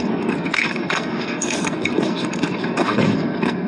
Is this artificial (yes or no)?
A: yes